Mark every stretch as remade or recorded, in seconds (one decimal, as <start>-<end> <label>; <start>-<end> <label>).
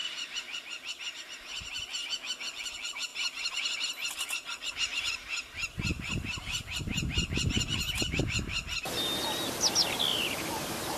0.0-2.4 remade; 2.4-3.1 recorded; 3.1-8.2 remade; 8.2-10.1 recorded; 10.1-11.0 remade